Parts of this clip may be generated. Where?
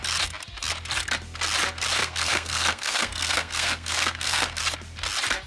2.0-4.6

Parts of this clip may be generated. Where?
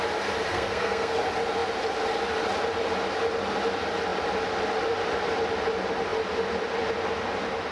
0.5-1.2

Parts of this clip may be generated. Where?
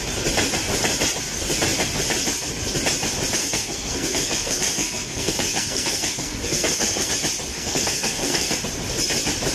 3.4-7.1; 7.5-8.6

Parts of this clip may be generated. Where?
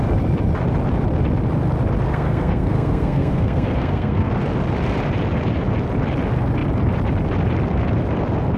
2.1-4.3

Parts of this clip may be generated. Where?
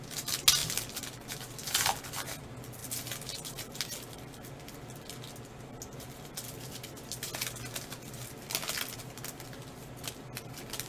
none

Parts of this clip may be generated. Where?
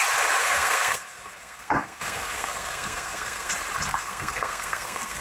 0.4-3.5; 3.9-5.2